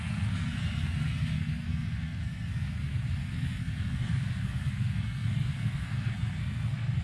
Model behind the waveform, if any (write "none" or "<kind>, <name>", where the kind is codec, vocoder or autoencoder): codec, SNAC